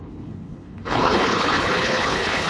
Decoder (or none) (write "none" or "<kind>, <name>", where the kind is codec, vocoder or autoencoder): codec, HILCodec